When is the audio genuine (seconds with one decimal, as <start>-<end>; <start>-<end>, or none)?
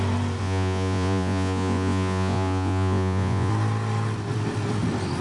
0.0-0.4; 3.5-5.2